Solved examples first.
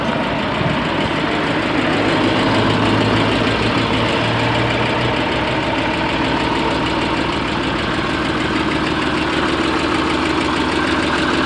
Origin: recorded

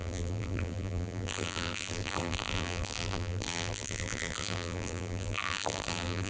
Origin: remade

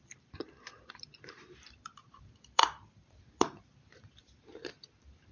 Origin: remade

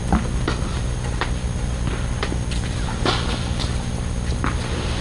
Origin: remade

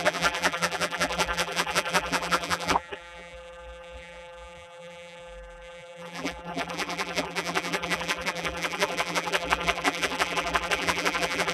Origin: remade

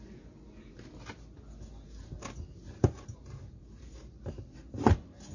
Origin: recorded